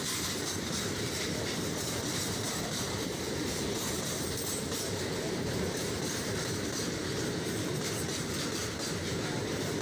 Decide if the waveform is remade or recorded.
remade